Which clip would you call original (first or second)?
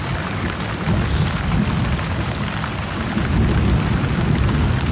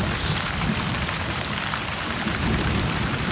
first